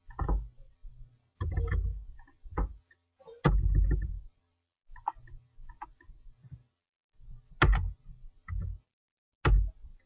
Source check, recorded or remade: recorded